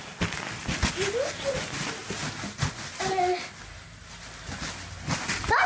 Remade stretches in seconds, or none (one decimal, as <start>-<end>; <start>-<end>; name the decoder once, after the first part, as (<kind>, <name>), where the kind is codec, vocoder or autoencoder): none